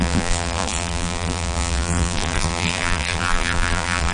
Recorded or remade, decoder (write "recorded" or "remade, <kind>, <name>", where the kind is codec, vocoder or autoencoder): remade, vocoder, BigVGAN v2